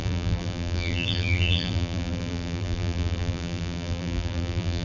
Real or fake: fake